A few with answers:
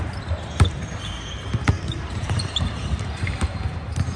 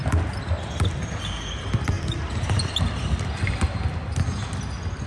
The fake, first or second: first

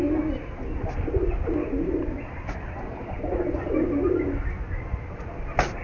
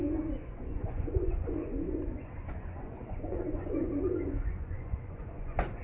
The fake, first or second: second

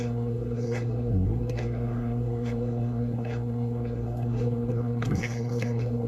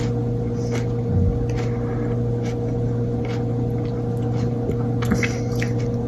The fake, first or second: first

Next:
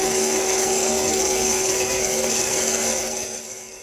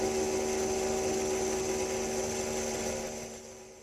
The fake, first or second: first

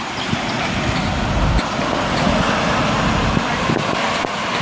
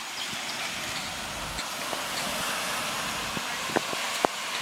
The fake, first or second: first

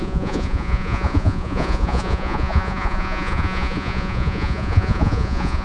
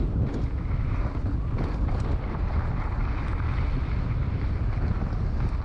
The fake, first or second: first